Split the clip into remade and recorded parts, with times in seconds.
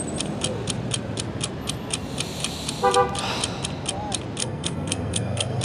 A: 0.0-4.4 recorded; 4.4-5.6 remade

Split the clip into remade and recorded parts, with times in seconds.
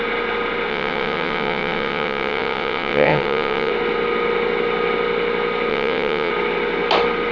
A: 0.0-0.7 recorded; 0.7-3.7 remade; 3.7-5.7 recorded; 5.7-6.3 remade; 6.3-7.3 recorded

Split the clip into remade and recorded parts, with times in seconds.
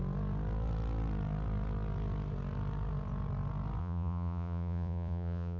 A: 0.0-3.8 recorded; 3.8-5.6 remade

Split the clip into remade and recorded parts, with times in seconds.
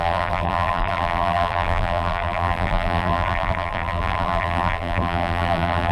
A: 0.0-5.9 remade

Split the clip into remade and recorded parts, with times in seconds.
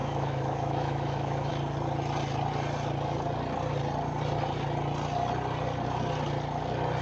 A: 0.0-1.5 remade; 1.5-7.0 recorded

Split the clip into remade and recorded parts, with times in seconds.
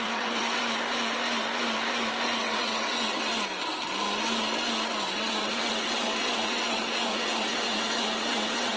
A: 0.0-0.6 remade; 0.6-2.4 recorded; 2.4-3.3 remade; 3.3-5.1 recorded; 5.1-8.8 remade